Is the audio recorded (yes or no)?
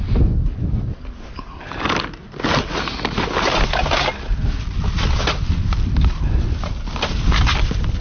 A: yes